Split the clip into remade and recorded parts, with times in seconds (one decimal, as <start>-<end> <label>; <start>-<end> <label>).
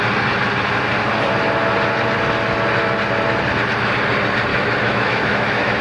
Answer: 0.0-4.5 recorded; 4.5-5.8 remade